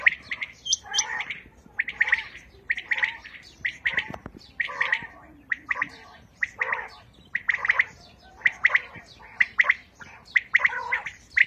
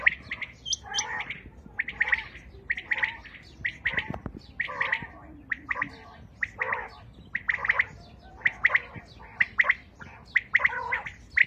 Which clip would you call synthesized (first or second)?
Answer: first